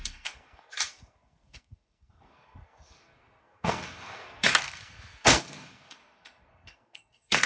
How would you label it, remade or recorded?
remade